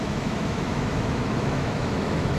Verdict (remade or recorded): remade